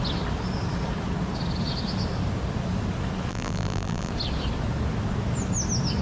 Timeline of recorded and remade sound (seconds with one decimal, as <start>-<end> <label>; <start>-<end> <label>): 0.0-3.3 recorded; 3.3-4.1 remade; 4.1-6.0 recorded